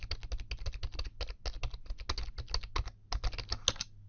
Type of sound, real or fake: real